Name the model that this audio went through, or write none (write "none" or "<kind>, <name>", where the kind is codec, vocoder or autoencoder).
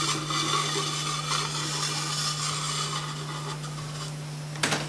none